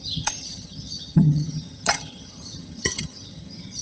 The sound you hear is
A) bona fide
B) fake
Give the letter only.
B